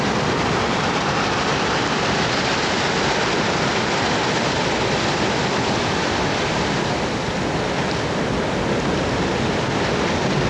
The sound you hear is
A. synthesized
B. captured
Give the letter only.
B